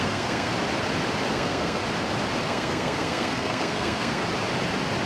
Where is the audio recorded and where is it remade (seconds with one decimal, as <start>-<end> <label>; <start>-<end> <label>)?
0.0-0.5 remade; 0.5-1.3 recorded; 1.3-1.8 remade; 1.8-2.4 recorded; 2.4-4.2 remade; 4.2-5.1 recorded